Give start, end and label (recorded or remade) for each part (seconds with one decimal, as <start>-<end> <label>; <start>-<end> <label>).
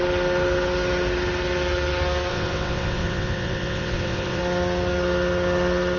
0.0-2.3 recorded; 2.3-4.4 remade; 4.4-6.0 recorded